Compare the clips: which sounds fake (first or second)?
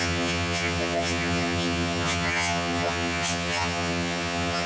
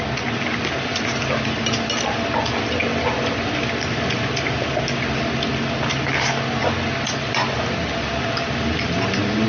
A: first